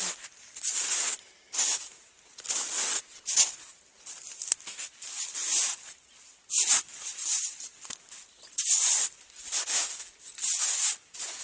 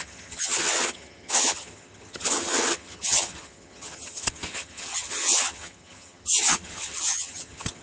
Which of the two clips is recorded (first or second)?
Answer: first